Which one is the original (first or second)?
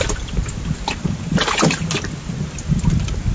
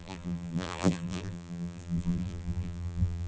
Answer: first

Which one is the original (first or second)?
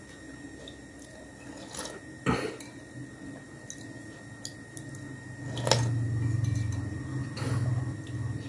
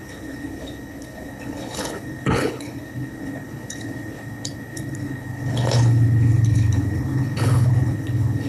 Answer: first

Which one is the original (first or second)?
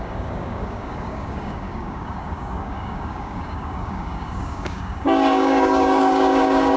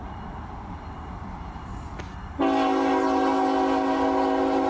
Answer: second